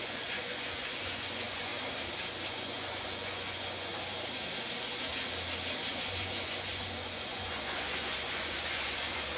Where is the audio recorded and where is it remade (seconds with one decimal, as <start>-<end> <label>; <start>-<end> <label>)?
0.0-1.7 remade; 1.7-2.5 recorded; 2.5-3.9 remade; 3.9-5.9 recorded; 5.9-9.4 remade